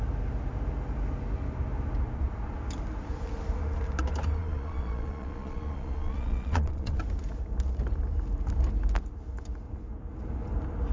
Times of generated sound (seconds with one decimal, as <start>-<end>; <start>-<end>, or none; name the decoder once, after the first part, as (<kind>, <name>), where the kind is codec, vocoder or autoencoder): 4.4-7.0 (vocoder, Vocos)